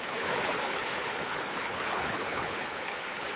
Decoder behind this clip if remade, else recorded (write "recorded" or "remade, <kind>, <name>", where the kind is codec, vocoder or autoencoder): remade, codec, HILCodec